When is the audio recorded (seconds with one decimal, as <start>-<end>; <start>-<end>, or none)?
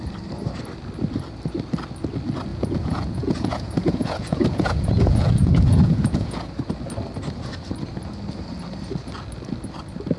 0.0-2.5; 6.5-10.2